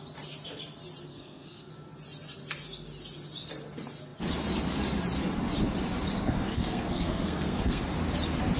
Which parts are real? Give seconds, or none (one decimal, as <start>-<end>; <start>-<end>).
0.0-1.1; 1.7-6.2; 7.8-8.6